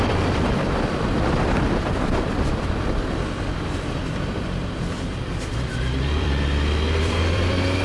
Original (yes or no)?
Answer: no